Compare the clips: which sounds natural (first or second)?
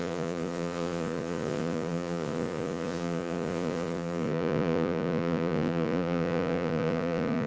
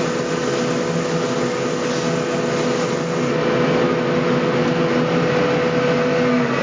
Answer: second